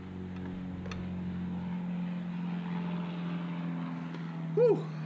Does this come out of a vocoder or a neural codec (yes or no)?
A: no